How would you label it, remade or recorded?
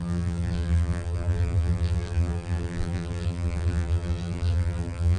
remade